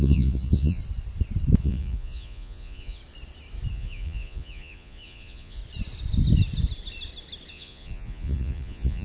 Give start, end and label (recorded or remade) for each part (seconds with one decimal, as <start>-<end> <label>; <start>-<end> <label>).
0.0-0.8 remade; 0.8-1.6 recorded; 1.6-3.0 remade; 3.0-3.7 recorded; 3.7-5.6 remade; 5.6-7.5 recorded; 7.5-9.0 remade